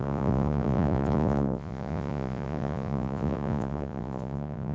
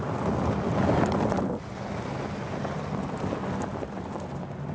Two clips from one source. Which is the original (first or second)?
second